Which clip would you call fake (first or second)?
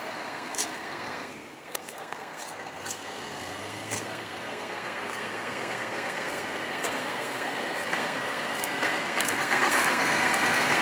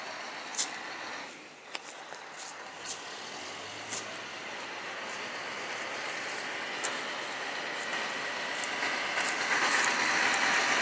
first